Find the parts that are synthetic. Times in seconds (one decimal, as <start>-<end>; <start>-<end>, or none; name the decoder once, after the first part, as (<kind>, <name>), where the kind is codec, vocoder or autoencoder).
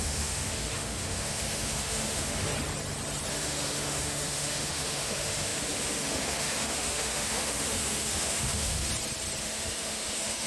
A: 0.0-2.5 (autoencoder, DAC-VAE); 3.3-8.9; 9.4-10.5